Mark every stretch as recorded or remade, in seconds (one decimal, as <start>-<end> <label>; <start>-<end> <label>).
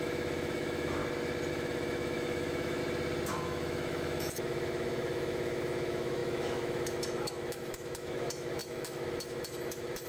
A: 0.0-1.0 remade; 1.0-1.5 recorded; 1.5-2.8 remade; 2.8-3.3 recorded; 3.3-10.1 remade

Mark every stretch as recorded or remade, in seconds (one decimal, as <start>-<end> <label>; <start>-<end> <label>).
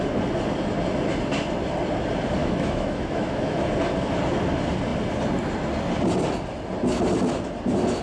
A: 0.0-2.4 recorded; 2.4-3.6 remade; 3.6-8.0 recorded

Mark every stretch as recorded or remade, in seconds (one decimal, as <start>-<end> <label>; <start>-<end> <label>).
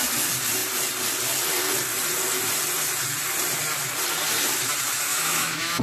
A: 0.0-5.1 recorded; 5.1-5.8 remade